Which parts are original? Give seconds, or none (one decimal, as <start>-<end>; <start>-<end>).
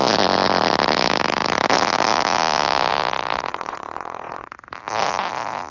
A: 0.0-3.5; 4.5-5.7